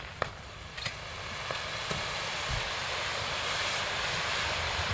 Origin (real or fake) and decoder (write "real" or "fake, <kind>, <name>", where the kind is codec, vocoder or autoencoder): fake, vocoder, BigVGAN v2